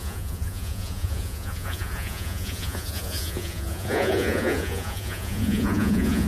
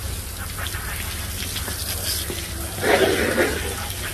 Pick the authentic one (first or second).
second